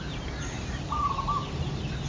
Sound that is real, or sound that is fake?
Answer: real